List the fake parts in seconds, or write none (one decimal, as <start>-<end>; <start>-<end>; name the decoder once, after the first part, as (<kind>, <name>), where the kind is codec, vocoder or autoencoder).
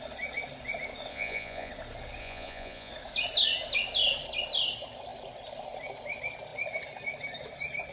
1.1-1.7 (vocoder, Vocos); 2.2-2.9